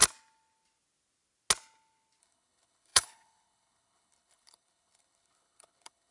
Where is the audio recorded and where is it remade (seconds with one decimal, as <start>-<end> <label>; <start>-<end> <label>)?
0.0-2.2 recorded; 2.2-6.1 remade